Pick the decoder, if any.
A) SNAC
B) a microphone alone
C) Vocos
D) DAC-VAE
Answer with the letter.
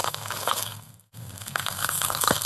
A